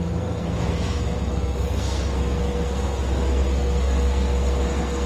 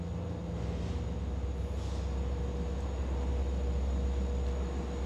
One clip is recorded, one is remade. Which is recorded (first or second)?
second